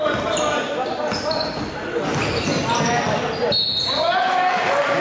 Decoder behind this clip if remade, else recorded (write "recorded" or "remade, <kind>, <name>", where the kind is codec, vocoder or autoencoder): recorded